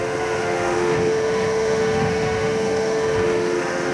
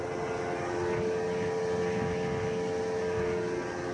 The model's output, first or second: first